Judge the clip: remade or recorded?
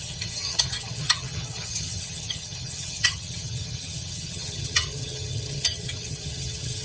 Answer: remade